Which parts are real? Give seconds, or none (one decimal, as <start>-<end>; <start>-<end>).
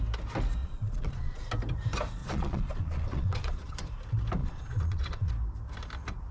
0.0-0.6; 1.4-2.2; 3.9-4.4; 5.3-6.3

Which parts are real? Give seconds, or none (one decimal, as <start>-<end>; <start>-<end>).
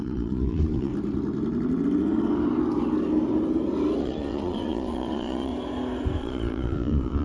0.9-4.0; 5.5-6.2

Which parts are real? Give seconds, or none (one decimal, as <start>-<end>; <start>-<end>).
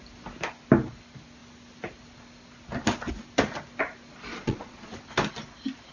0.0-4.3; 4.9-5.9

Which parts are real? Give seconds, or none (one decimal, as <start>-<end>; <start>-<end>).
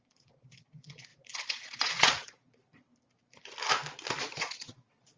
2.9-4.2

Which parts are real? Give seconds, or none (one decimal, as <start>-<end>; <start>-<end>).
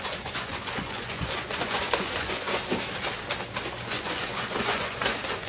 2.6-3.6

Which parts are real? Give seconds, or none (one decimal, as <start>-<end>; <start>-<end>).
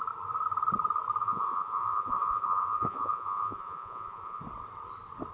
0.0-1.2; 4.4-5.3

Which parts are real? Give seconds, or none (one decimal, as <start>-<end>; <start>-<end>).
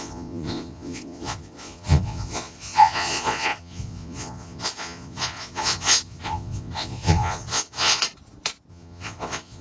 8.0-8.7